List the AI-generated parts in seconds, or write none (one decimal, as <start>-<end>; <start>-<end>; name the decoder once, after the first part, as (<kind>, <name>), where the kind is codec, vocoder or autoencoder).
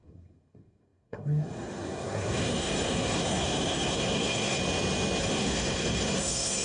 0.0-4.6 (codec, SNAC); 5.2-6.6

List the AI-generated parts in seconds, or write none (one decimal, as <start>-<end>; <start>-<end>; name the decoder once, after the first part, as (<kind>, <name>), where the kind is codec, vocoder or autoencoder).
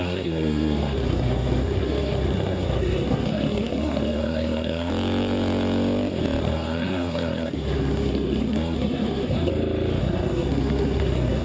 0.0-4.9 (codec, SNAC); 6.4-9.5; 10.0-11.4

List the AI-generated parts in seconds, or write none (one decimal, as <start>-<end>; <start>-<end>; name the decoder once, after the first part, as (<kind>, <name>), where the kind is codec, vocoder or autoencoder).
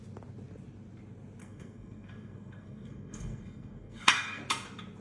1.4-4.4 (codec, SNAC)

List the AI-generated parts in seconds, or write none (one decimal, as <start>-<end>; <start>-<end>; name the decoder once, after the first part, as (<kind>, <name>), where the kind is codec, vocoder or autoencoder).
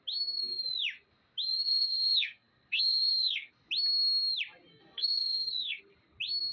1.5-3.5 (codec, SNAC); 4.7-5.8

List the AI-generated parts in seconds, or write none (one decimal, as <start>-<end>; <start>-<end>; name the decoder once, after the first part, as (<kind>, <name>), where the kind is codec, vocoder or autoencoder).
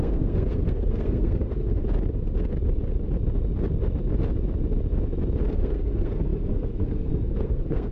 0.0-1.8 (codec, SNAC); 5.5-7.9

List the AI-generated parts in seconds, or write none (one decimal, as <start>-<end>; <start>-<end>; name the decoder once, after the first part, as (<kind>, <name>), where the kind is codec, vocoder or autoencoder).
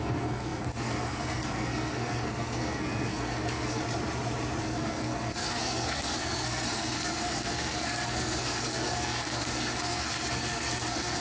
0.0-3.8 (codec, SNAC); 4.6-11.2